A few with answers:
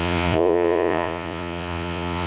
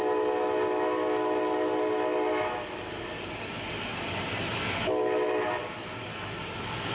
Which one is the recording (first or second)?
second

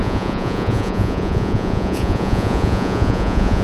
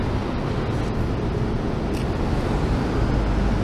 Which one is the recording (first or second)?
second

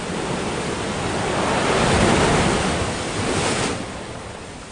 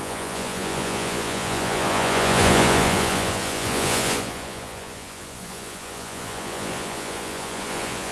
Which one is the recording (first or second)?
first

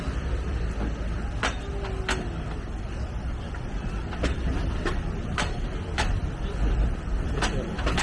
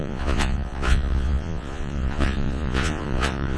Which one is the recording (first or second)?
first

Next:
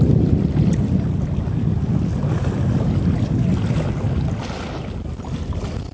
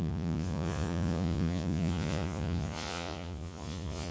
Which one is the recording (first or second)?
first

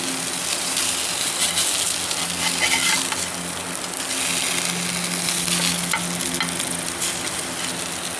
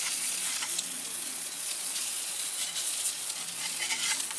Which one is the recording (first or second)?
first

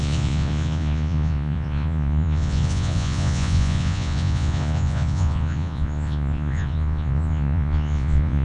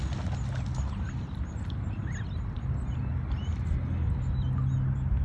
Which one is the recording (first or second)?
second